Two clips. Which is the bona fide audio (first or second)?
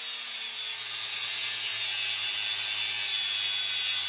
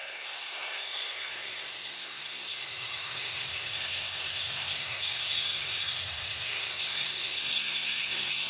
first